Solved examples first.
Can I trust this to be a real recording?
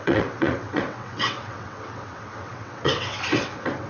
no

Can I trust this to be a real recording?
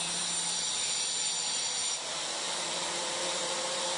no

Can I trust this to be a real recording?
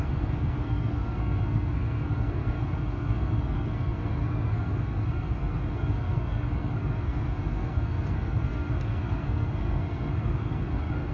no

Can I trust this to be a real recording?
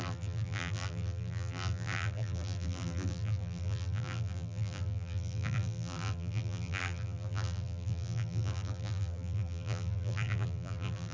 no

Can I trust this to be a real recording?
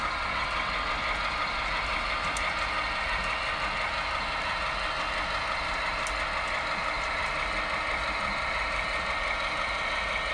yes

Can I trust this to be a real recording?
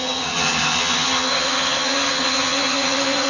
no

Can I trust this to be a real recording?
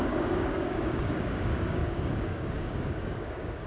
no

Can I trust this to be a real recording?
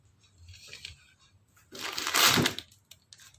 yes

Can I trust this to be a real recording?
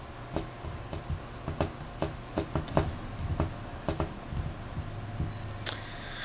yes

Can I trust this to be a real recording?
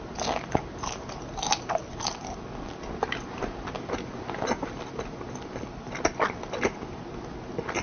yes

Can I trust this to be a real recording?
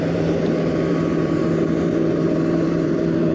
no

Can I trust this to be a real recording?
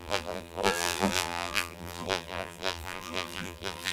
no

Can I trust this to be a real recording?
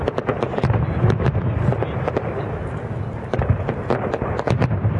yes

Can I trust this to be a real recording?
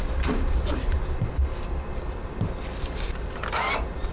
yes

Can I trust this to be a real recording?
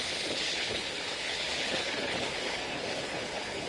no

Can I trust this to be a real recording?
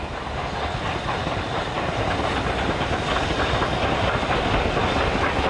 yes